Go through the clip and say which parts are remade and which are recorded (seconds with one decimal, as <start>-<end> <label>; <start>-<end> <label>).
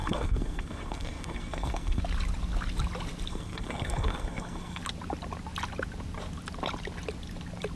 0.0-2.0 remade; 2.0-3.3 recorded; 3.3-4.8 remade; 4.8-7.8 recorded